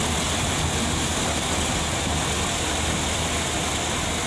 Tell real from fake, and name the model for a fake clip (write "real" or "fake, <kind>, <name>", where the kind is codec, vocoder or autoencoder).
real